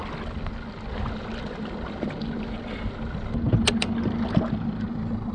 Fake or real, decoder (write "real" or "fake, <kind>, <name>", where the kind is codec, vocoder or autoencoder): real